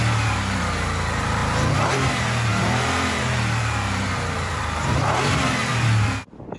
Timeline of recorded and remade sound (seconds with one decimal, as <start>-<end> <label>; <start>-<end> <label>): 0.0-5.7 remade; 5.7-6.6 recorded